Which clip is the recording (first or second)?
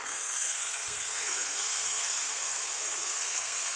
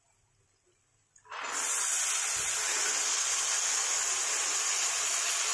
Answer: second